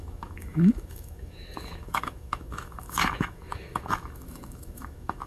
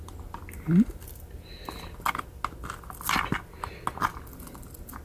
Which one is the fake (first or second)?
first